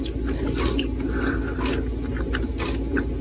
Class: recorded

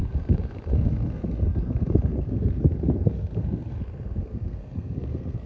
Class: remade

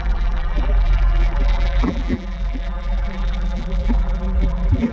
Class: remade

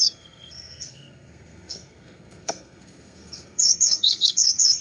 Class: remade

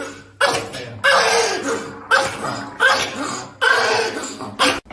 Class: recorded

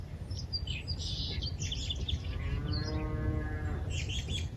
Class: recorded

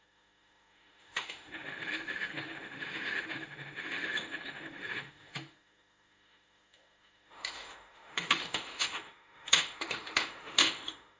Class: remade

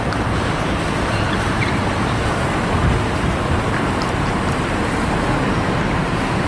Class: remade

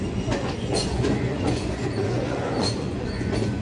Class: remade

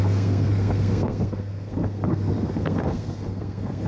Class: remade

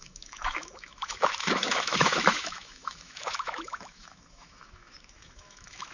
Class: remade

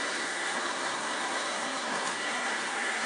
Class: remade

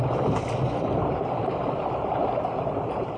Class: recorded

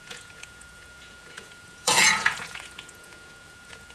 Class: remade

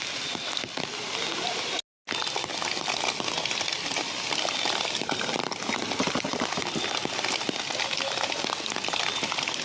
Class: recorded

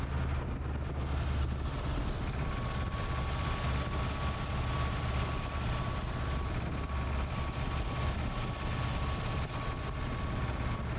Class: recorded